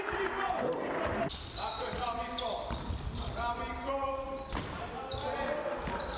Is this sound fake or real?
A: real